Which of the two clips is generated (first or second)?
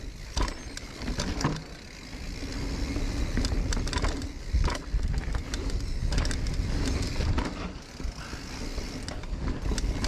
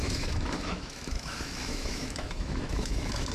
second